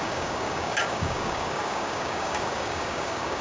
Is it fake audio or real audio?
fake